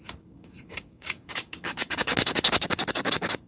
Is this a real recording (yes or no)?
no